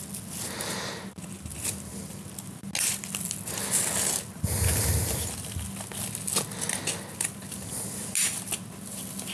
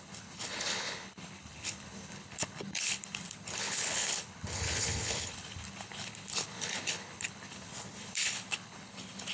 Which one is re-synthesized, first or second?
second